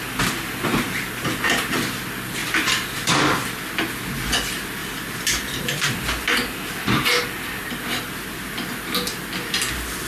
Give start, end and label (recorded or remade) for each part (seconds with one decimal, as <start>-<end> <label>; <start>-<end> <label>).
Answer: 0.0-2.4 recorded; 2.4-3.2 remade; 3.2-4.8 recorded; 4.8-5.9 remade; 5.9-10.1 recorded